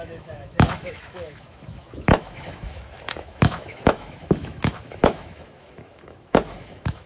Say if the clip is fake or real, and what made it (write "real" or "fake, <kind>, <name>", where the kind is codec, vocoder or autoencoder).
fake, autoencoder, DAC-VAE